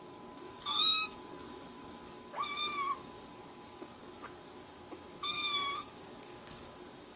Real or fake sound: fake